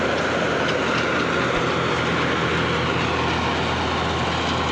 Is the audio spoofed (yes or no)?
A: no